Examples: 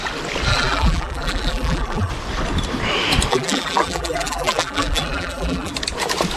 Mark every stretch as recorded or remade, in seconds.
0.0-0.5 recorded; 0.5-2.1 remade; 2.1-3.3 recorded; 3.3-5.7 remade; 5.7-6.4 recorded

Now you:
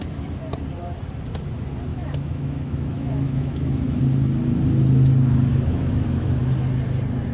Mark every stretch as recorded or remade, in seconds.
0.0-1.9 recorded; 1.9-4.0 remade; 4.0-5.5 recorded; 5.5-6.4 remade; 6.4-7.3 recorded

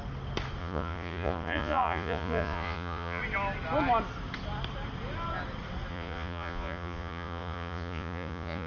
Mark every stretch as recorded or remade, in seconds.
0.0-0.6 recorded; 0.6-3.2 remade; 3.2-5.9 recorded; 5.9-8.7 remade

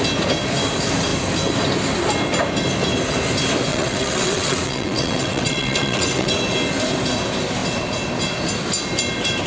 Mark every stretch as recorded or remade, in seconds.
0.0-3.7 recorded; 3.7-6.3 remade; 6.3-9.5 recorded

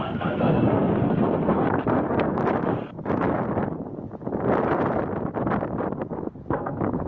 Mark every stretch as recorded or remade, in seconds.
0.0-2.4 remade; 2.4-6.5 recorded; 6.5-7.1 remade

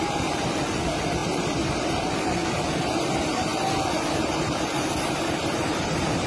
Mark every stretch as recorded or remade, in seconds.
0.0-6.3 recorded

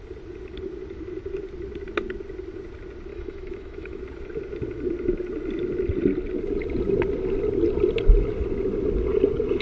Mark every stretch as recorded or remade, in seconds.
0.0-3.1 recorded; 3.1-4.0 remade; 4.0-9.6 recorded

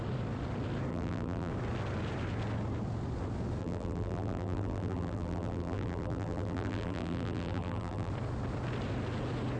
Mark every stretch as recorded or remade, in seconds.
0.0-0.9 recorded; 0.9-1.5 remade; 1.5-3.6 recorded; 3.6-8.1 remade; 8.1-9.6 recorded